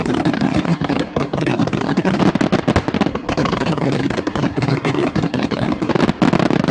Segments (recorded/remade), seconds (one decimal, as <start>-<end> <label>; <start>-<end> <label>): 0.0-2.2 remade; 2.2-3.1 recorded; 3.1-5.9 remade; 5.9-6.7 recorded